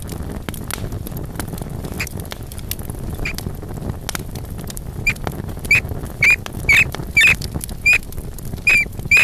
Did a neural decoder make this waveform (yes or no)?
no